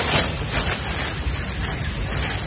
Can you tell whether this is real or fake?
real